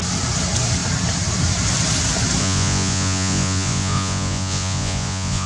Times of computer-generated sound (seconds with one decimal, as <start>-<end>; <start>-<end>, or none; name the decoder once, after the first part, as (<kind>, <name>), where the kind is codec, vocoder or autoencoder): 2.4-5.5 (vocoder, Vocos)